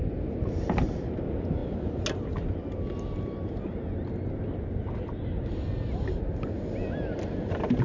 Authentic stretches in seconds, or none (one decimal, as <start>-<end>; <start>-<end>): 0.0-7.8